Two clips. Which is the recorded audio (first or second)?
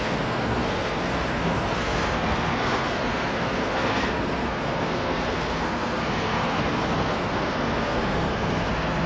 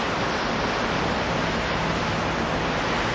second